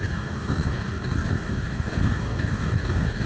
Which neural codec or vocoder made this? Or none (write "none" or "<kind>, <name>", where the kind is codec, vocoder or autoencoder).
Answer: codec, DAC